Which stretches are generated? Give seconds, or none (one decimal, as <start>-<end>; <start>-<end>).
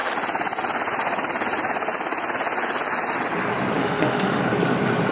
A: 3.8-4.4